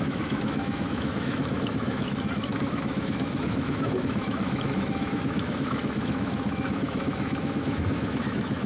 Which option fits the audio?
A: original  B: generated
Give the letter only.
B